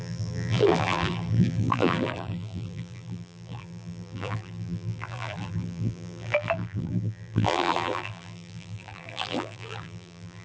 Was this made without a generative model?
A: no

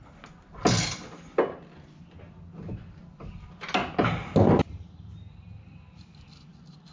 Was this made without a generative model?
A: yes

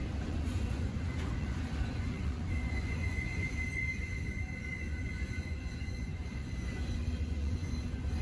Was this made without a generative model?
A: no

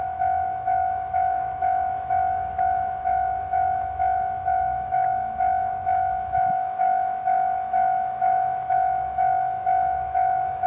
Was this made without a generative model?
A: no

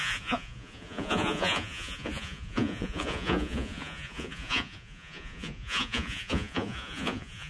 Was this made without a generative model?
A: no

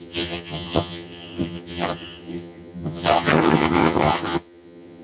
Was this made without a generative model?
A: no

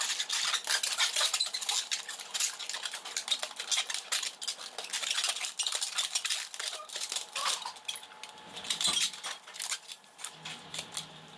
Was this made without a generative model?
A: yes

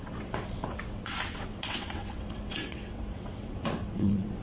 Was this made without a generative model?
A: no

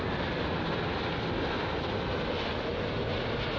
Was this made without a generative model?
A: yes